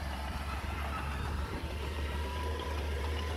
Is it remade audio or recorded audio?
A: remade